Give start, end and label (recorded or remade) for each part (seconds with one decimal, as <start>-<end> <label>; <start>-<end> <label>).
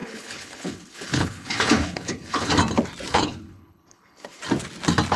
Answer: 0.0-2.5 remade; 2.5-3.1 recorded; 3.1-4.4 remade; 4.4-5.2 recorded